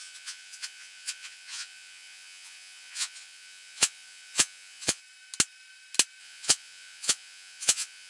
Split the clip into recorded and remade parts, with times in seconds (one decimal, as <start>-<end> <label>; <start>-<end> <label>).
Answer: 0.0-5.0 remade; 5.0-6.2 recorded; 6.2-8.1 remade